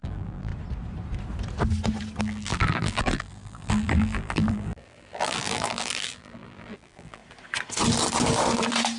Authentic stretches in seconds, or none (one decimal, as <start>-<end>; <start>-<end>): 0.5-2.2; 7.2-9.0